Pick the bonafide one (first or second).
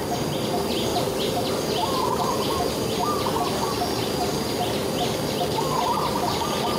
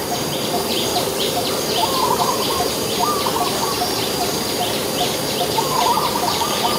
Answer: first